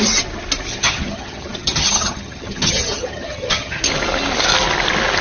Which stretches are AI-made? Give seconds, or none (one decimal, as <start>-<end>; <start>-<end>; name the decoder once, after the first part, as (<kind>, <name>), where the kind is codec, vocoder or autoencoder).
0.7-3.8 (vocoder, HiFi-GAN)